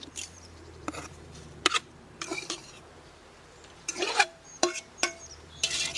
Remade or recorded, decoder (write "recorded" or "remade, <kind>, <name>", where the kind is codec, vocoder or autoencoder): remade, vocoder, BigVGAN v2